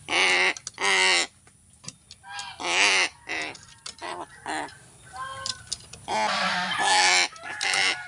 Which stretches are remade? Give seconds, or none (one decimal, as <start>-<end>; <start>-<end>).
none